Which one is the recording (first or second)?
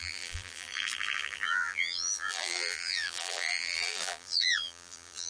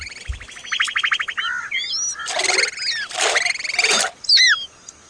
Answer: second